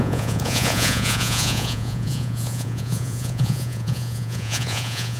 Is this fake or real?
fake